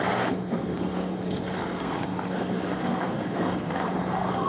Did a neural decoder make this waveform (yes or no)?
yes